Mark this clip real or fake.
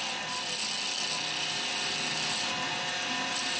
real